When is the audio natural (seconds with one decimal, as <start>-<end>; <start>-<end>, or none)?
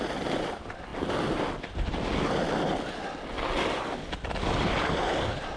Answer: 0.0-5.6